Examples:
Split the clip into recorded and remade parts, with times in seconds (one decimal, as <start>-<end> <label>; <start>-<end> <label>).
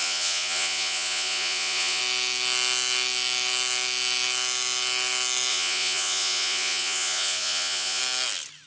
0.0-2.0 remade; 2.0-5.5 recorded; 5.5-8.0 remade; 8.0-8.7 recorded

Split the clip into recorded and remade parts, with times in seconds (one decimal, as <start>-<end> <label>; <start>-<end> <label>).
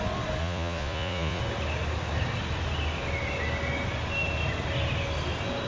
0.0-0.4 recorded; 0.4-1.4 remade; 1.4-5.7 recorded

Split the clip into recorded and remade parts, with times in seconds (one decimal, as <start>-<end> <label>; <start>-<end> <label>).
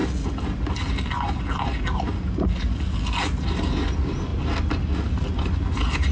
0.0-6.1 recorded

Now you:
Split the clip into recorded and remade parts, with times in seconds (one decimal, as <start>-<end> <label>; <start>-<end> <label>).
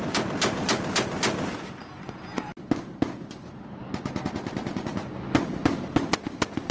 0.0-6.7 recorded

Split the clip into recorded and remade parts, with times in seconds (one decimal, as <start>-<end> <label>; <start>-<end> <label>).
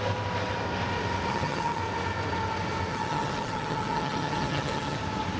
0.0-1.3 recorded; 1.3-1.8 remade; 1.8-2.9 recorded; 2.9-5.0 remade; 5.0-5.4 recorded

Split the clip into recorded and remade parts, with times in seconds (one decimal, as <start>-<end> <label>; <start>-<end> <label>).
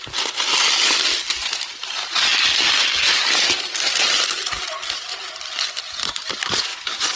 0.0-6.7 recorded; 6.7-7.2 remade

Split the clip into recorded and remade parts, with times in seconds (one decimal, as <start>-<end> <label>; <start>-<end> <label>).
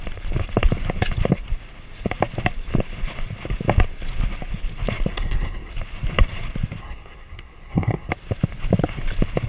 0.0-5.1 recorded; 5.1-5.7 remade; 5.7-6.8 recorded; 6.8-8.1 remade; 8.1-9.5 recorded